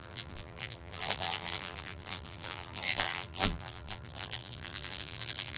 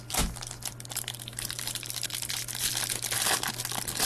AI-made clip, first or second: first